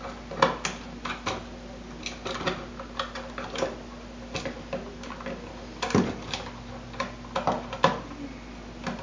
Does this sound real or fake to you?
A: real